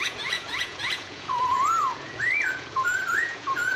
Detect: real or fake fake